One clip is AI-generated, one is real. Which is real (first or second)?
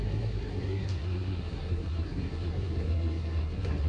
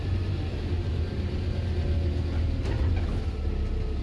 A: second